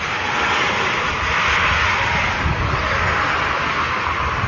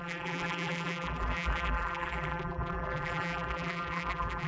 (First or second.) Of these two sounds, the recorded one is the first